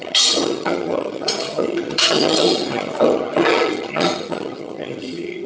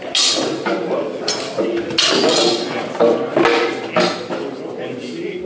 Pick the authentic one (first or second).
second